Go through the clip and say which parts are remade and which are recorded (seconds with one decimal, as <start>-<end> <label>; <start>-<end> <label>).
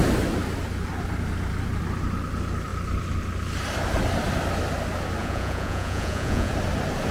0.0-5.2 recorded; 5.2-6.5 remade; 6.5-7.1 recorded